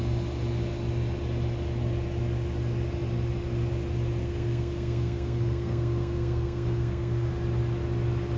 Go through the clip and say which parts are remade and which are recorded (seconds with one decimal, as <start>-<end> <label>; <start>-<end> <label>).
0.0-4.2 recorded; 4.2-7.3 remade; 7.3-8.4 recorded